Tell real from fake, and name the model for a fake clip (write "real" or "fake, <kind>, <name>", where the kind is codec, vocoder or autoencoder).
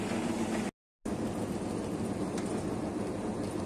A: real